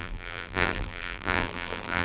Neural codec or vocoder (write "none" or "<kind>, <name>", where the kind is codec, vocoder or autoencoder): vocoder, BigVGAN v2